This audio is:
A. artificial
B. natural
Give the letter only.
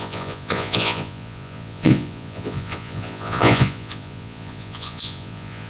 A